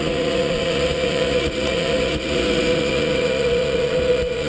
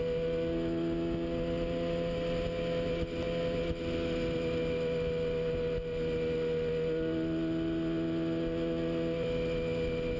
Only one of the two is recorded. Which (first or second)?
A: second